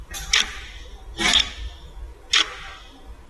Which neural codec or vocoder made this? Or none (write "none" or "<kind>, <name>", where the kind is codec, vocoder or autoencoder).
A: none